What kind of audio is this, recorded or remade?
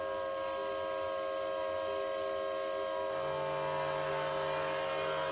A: recorded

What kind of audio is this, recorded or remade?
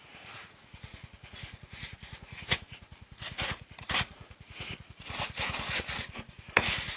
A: remade